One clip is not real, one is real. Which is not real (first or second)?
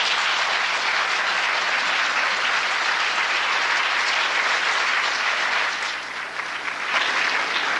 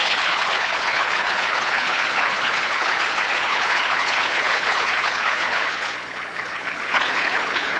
second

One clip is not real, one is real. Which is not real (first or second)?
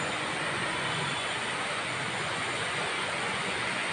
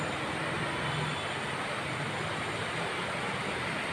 first